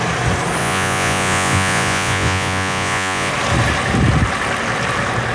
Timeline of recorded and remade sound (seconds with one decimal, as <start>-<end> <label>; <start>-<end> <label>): 0.0-0.6 recorded; 0.6-3.3 remade; 3.3-5.3 recorded